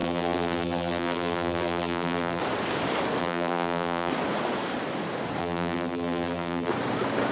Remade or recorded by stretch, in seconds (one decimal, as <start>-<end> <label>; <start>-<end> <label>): 0.0-2.4 remade; 2.4-3.2 recorded; 3.2-4.1 remade; 4.1-5.4 recorded; 5.4-6.7 remade; 6.7-7.3 recorded